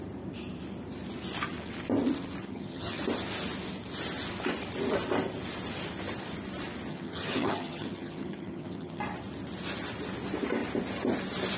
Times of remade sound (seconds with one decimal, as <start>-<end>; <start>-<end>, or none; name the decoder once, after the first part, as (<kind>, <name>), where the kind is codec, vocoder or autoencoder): 2.4-3.0 (vocoder, HiFi-GAN); 6.9-9.0